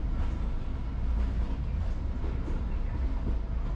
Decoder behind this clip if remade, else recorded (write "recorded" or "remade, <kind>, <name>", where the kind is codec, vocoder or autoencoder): recorded